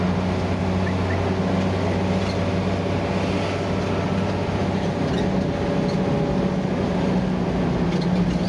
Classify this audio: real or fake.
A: real